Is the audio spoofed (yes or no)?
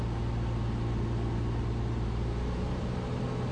no